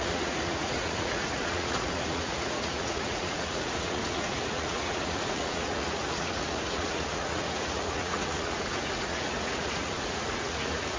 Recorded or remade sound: remade